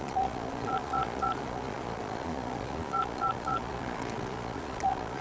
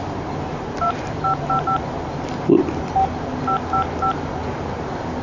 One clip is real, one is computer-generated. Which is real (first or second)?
second